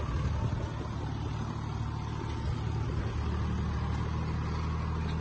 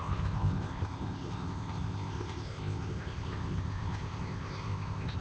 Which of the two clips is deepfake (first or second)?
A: second